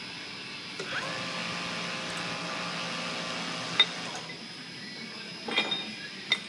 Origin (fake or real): real